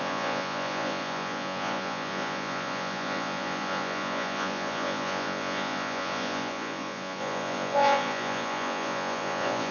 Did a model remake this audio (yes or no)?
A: yes